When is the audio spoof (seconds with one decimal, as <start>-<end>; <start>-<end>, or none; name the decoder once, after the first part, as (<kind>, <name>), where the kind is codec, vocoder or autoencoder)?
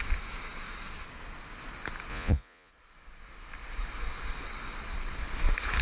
2.1-2.7 (vocoder, Vocos)